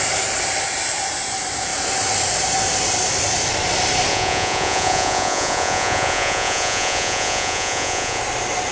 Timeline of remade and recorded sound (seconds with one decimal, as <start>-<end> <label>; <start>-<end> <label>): 0.0-4.1 recorded; 4.1-8.2 remade; 8.2-8.7 recorded